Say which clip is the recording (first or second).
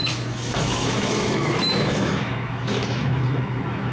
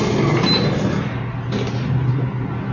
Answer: second